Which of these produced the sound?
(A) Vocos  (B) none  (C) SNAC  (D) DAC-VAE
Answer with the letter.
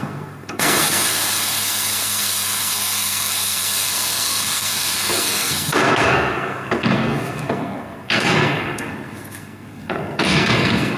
C